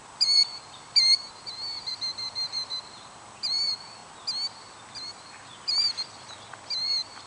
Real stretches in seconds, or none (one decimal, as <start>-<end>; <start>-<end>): 4.0-4.9